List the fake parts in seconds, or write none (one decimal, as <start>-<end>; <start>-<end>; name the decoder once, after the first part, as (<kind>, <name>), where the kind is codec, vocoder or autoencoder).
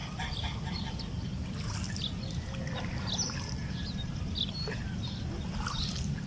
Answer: 0.0-2.1 (vocoder, BigVGAN v2)